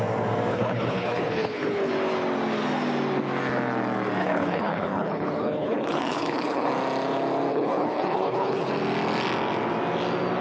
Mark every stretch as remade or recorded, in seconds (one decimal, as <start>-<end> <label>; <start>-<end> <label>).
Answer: 0.0-0.5 recorded; 0.5-1.9 remade; 1.9-4.2 recorded; 4.2-6.7 remade; 6.7-7.5 recorded; 7.5-8.7 remade; 8.7-10.4 recorded